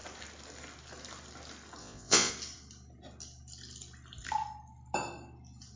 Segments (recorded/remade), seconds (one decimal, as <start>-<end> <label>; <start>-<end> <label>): 0.0-1.8 recorded; 1.8-2.3 remade; 2.3-5.8 recorded